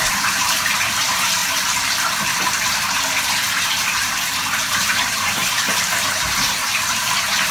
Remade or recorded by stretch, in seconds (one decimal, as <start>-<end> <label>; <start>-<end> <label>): 0.0-1.4 remade; 1.4-4.7 recorded; 4.7-7.5 remade